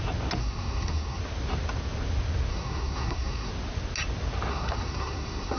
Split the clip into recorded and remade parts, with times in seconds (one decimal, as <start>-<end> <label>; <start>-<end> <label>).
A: 0.0-0.4 recorded; 0.4-1.2 remade; 1.2-2.5 recorded; 2.5-3.5 remade; 3.5-4.5 recorded; 4.5-5.6 remade